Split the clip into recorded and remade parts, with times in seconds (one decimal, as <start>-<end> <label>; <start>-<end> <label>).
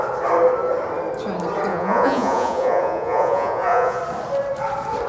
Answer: 0.0-1.7 recorded; 1.7-4.0 remade; 4.0-5.1 recorded